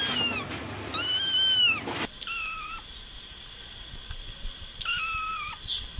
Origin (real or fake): real